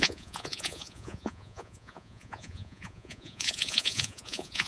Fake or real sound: fake